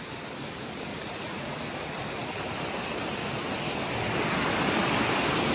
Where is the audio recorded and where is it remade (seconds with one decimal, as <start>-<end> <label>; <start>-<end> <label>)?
0.0-0.9 recorded; 0.9-1.5 remade; 1.5-5.5 recorded